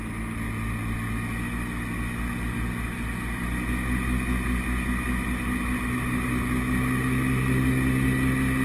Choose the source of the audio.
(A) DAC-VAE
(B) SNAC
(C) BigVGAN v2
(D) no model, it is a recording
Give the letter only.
D